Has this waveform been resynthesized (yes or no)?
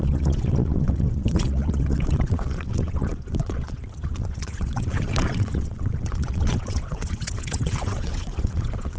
yes